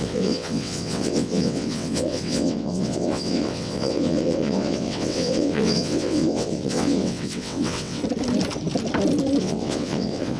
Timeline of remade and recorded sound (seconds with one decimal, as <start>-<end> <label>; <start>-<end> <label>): 0.0-8.0 remade; 8.0-9.4 recorded; 9.4-10.4 remade